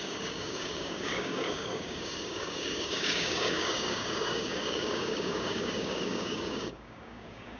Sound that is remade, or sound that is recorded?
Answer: remade